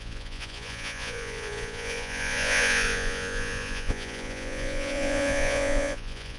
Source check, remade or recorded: remade